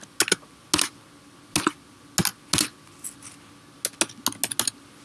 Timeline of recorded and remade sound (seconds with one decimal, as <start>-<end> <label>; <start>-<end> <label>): 0.0-5.0 recorded